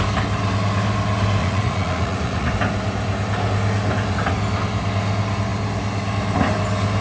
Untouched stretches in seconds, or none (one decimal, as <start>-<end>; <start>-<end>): 0.0-1.4; 2.5-7.0